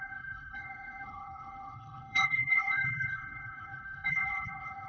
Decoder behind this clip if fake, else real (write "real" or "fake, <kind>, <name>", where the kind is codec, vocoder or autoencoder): fake, codec, HILCodec